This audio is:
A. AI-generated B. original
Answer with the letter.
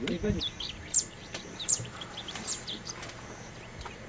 A